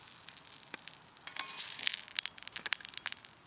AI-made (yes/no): no